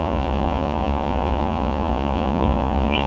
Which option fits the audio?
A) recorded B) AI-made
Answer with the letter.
B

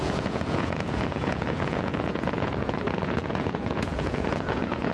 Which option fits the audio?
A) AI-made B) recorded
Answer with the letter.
A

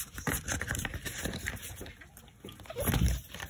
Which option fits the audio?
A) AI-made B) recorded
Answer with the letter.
B